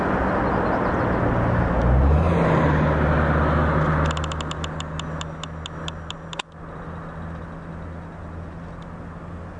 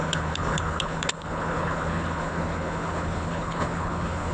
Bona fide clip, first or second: first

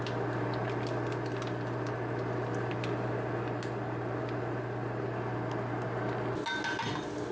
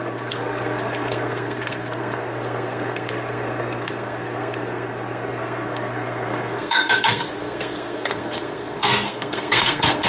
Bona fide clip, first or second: first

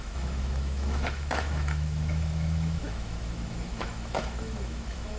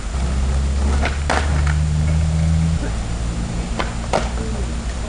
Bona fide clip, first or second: second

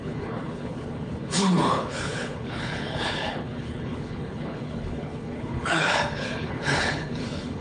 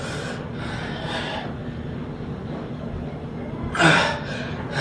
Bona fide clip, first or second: second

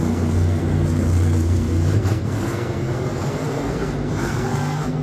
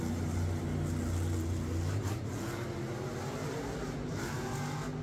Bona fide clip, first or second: second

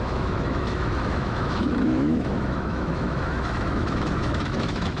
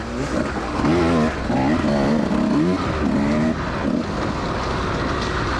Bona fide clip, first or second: second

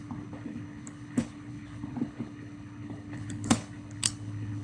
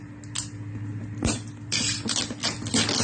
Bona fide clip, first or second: second